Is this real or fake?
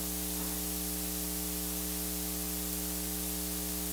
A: real